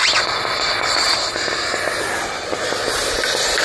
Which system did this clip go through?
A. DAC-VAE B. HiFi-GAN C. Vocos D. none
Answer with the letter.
D